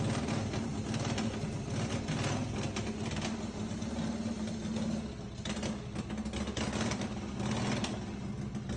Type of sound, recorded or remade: recorded